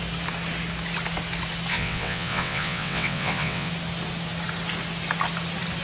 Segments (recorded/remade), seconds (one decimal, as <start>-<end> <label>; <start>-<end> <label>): 0.0-1.7 recorded; 1.7-3.7 remade; 3.7-5.8 recorded